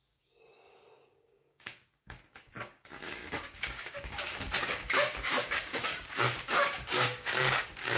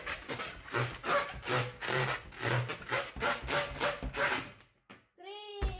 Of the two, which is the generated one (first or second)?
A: first